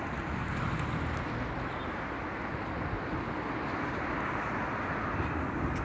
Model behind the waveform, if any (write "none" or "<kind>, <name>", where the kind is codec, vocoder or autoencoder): none